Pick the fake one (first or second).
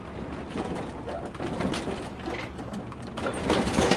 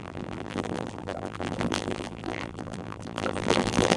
second